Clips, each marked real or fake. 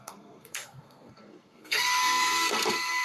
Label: fake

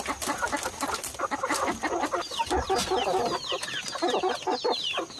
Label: real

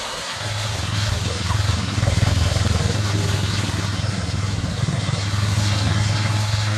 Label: fake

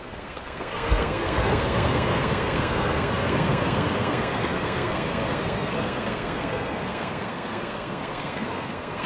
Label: fake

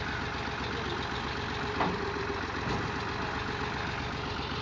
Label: real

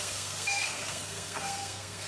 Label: fake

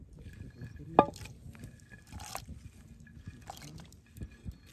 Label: real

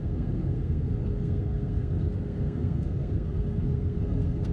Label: fake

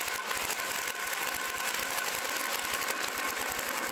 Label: real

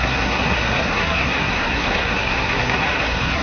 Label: fake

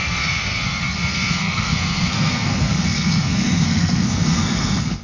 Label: fake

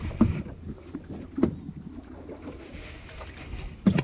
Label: real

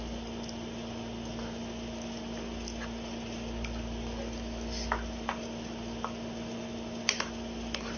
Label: real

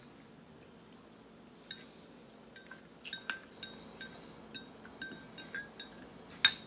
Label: real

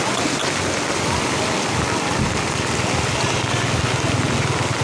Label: real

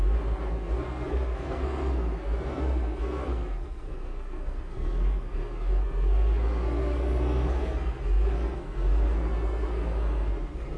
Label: fake